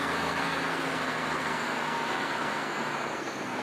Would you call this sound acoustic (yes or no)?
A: no